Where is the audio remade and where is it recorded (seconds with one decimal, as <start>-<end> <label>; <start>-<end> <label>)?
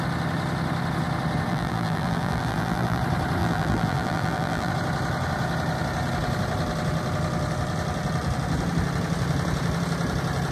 0.0-1.5 recorded; 1.5-3.0 remade; 3.0-3.4 recorded; 3.4-4.7 remade; 4.7-10.5 recorded